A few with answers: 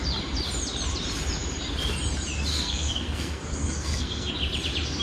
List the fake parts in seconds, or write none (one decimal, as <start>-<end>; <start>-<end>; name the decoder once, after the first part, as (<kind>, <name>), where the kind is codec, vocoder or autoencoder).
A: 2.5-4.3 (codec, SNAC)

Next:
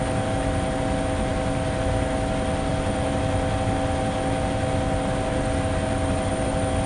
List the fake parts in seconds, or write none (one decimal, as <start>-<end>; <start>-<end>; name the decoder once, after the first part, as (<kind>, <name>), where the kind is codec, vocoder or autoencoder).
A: none

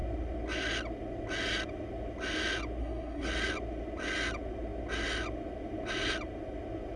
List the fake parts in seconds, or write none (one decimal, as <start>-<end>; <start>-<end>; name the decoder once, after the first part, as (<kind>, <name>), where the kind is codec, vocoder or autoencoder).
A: 2.8-3.3 (codec, SNAC)

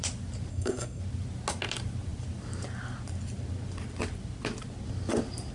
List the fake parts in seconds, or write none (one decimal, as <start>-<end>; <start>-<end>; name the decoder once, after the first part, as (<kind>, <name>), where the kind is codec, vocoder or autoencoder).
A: 0.5-1.0 (codec, SNAC)

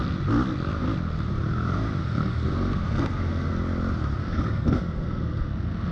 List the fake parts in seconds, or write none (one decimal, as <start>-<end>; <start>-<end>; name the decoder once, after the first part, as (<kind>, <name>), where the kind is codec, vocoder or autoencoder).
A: 2.0-3.5 (codec, SNAC); 4.2-5.9